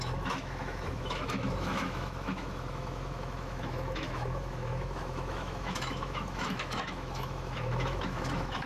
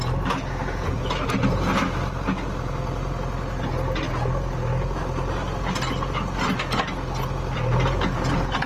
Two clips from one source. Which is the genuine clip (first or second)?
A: second